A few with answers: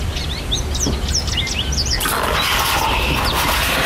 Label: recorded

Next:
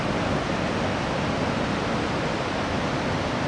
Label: recorded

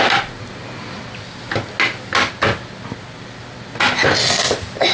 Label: recorded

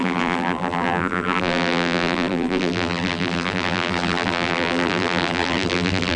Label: remade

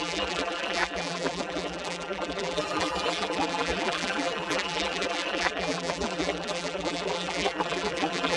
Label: remade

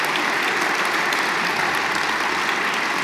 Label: recorded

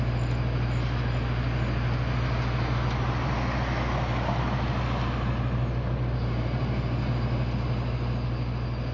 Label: recorded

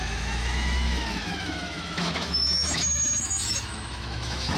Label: remade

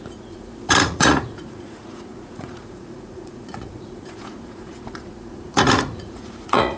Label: remade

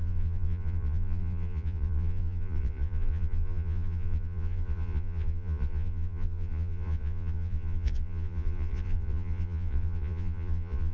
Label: remade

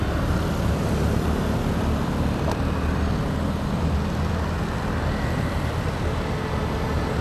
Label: recorded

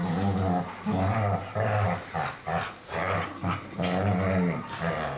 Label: recorded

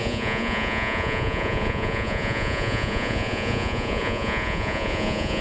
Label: remade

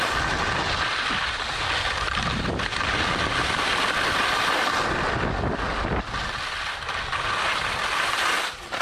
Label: recorded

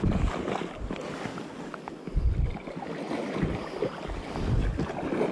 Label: recorded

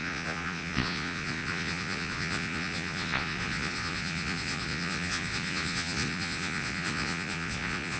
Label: remade